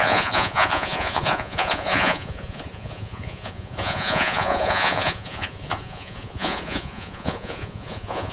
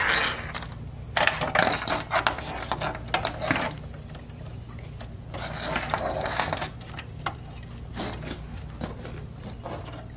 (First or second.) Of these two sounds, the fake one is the first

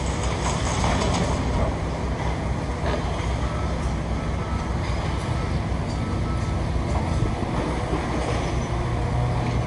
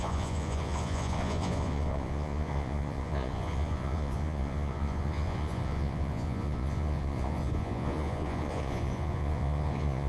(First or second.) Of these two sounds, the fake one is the second